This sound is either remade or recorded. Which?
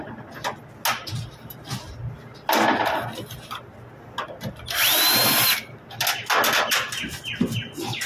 recorded